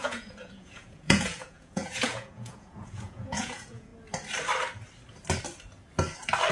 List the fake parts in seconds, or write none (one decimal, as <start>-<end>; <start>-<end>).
0.0-3.9

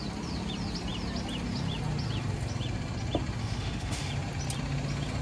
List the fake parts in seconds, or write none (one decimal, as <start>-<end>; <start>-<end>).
3.4-4.1